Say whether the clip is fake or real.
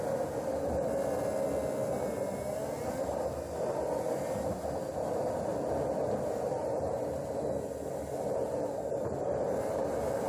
real